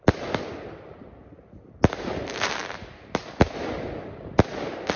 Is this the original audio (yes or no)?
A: yes